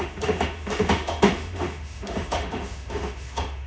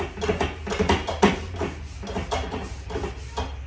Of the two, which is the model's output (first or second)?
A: first